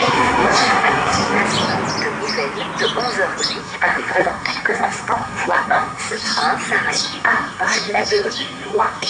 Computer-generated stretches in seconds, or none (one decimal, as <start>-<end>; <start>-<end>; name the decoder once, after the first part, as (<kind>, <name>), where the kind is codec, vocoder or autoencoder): 0.0-1.4 (codec, SNAC); 3.6-6.4; 6.9-9.1